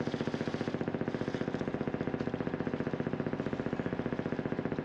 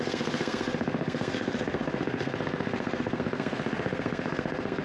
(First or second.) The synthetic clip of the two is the second